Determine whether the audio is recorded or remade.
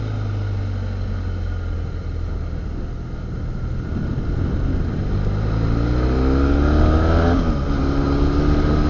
recorded